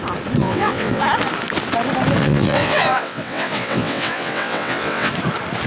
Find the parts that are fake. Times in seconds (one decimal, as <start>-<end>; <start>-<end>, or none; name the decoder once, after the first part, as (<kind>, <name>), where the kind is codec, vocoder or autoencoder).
0.4-1.0 (vocoder, WaveNeXt); 2.2-5.1